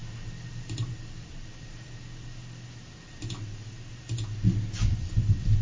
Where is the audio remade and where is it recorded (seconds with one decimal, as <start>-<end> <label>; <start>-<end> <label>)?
0.0-5.6 recorded